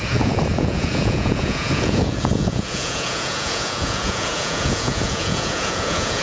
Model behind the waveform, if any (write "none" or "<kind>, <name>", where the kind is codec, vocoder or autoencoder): vocoder, Vocos